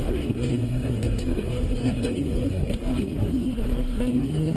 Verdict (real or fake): fake